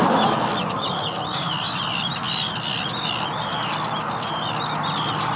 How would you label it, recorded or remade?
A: recorded